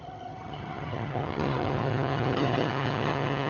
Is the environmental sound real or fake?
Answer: fake